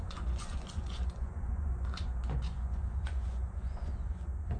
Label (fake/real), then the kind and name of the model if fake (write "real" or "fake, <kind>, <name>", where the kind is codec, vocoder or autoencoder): fake, vocoder, Vocos